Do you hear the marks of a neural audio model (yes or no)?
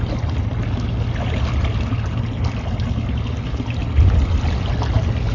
no